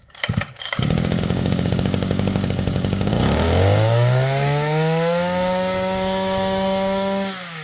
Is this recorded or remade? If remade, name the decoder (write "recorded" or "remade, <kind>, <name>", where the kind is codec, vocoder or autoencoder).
remade, codec, DAC